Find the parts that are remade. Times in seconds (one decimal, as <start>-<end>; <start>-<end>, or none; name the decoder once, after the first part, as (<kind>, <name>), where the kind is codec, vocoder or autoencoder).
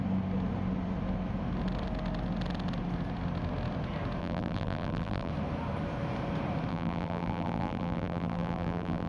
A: 4.2-5.3 (vocoder, BigVGAN v2); 6.7-9.1